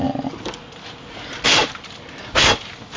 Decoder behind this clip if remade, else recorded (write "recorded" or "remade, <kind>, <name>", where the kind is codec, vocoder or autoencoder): recorded